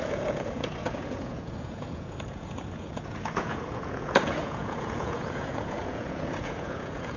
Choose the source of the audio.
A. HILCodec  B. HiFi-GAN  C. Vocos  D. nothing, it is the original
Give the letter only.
C